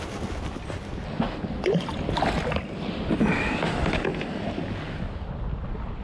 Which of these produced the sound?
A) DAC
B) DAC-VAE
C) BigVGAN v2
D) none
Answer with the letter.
D